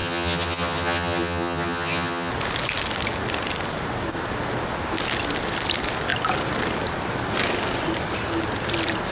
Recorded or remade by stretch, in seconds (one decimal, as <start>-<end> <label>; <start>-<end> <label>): 0.0-2.3 remade; 2.3-9.1 recorded